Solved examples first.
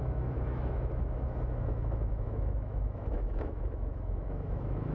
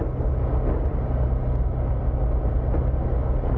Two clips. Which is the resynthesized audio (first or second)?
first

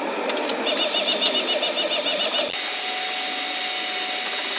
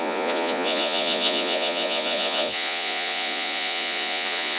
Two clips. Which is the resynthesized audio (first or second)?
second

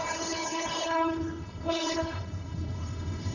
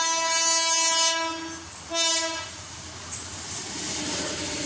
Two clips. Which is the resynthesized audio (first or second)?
first